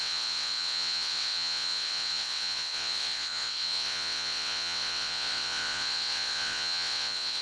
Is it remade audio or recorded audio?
remade